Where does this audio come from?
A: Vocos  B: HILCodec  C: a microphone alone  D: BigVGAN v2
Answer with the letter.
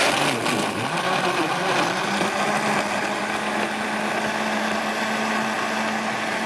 C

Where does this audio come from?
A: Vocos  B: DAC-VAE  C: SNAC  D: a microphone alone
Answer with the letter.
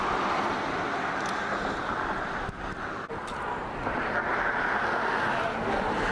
D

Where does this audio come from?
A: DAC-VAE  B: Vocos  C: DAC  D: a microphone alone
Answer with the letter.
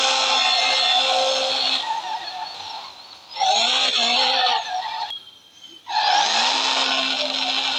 D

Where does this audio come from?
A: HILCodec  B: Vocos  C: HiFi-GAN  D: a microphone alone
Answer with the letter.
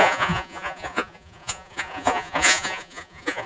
B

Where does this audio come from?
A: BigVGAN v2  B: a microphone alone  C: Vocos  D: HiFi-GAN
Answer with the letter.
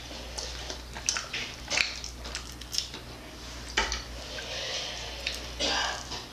B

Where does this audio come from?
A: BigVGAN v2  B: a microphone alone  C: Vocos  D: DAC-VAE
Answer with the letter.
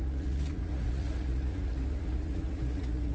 C